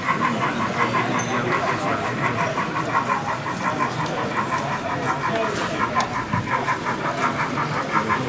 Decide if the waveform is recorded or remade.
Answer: recorded